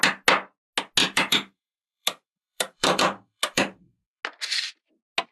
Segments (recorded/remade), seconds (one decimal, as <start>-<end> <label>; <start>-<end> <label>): 0.0-1.0 recorded; 1.0-4.2 remade; 4.2-5.3 recorded